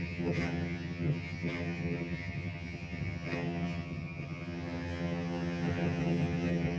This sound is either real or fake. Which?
fake